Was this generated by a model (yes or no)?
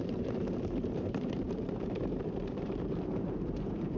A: yes